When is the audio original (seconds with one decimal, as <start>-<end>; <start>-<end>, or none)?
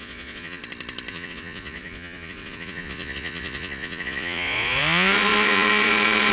0.6-1.1